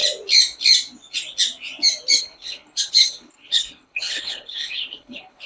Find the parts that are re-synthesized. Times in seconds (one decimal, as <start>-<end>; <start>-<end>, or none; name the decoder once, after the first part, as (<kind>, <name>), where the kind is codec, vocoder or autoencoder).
2.2-5.5 (codec, HILCodec)